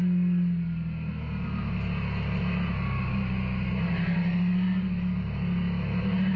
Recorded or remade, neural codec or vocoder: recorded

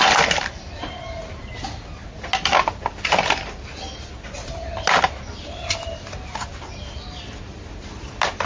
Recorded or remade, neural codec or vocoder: recorded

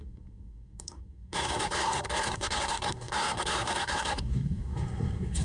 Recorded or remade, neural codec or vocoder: remade, codec, SNAC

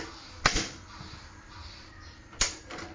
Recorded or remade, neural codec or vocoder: recorded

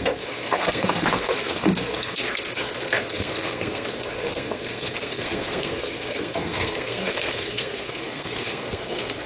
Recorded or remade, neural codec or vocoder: remade, codec, SNAC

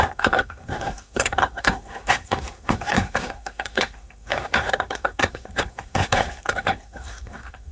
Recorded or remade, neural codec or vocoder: remade, codec, SNAC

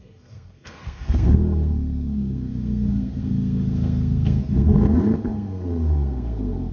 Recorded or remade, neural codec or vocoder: remade, codec, SNAC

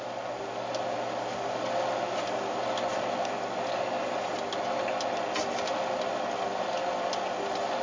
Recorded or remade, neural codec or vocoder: recorded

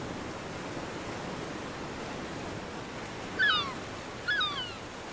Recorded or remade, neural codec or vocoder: recorded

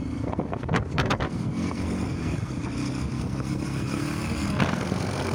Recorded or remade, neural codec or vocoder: remade, codec, SNAC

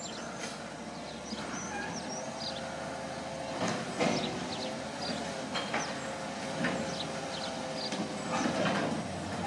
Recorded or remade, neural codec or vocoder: recorded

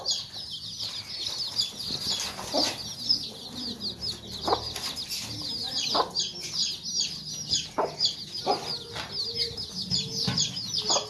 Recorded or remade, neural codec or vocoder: recorded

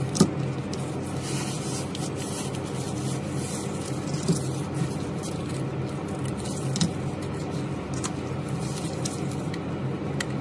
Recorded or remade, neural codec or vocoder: recorded